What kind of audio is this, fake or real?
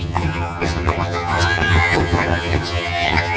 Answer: fake